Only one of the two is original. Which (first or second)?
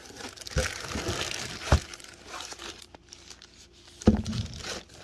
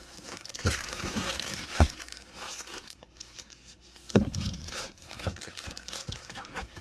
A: first